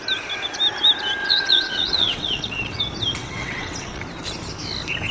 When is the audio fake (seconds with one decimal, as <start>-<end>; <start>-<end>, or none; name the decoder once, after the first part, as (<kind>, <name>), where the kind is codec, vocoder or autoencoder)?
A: 1.2-2.8 (vocoder, WaveNeXt); 3.2-4.0

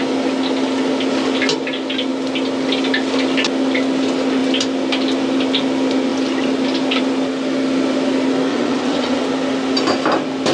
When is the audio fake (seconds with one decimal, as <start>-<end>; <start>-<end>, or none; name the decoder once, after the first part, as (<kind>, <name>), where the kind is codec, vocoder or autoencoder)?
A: 8.5-9.2 (vocoder, WaveNeXt)

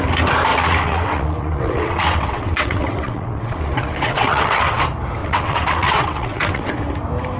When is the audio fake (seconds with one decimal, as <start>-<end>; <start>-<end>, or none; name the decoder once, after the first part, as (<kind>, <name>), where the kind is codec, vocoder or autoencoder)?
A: 0.5-4.8 (vocoder, WaveNeXt); 5.2-6.7

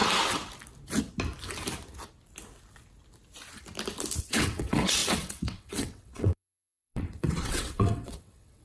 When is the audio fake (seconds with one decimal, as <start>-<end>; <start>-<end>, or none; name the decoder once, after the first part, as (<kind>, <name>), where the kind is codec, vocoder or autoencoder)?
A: 4.2-8.6 (vocoder, WaveNeXt)

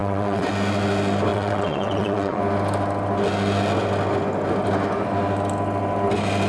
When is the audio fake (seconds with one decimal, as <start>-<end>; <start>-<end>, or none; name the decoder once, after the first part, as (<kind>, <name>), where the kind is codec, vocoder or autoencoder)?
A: 0.0-0.5 (vocoder, WaveNeXt); 1.3-2.4

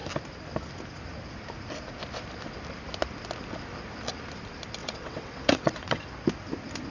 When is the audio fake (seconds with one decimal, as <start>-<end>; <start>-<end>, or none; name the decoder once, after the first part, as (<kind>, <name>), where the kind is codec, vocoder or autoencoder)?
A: 4.8-6.1 (vocoder, WaveNeXt)